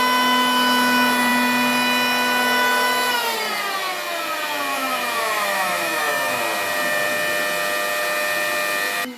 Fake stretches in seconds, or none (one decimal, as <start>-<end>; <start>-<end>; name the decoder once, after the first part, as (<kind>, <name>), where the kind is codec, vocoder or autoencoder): 4.7-6.4 (autoencoder, DAC-VAE)